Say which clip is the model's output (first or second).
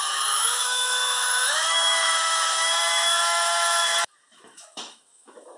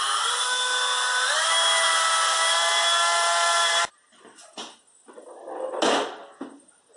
first